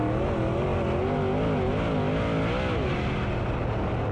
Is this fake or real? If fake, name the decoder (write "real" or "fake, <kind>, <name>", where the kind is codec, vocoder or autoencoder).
real